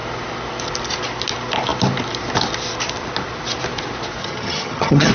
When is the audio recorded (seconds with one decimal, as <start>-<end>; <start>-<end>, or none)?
0.0-4.2